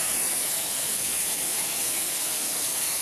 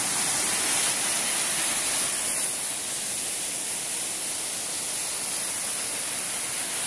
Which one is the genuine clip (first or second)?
second